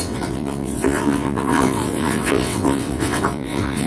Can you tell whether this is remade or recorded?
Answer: remade